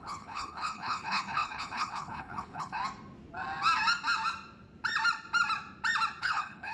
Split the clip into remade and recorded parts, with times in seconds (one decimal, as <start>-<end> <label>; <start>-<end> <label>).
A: 0.0-2.8 remade; 2.8-6.2 recorded; 6.2-6.7 remade